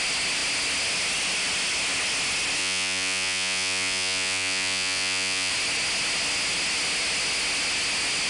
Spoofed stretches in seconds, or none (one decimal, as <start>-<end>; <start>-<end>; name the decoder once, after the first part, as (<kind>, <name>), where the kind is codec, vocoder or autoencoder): 2.6-5.5 (vocoder, Vocos)